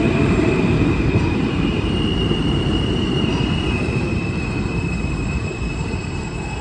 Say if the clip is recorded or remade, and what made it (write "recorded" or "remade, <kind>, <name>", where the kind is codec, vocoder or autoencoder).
remade, vocoder, BigVGAN v2